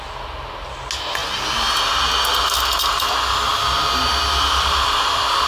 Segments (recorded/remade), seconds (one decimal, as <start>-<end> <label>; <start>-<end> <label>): 0.0-5.5 recorded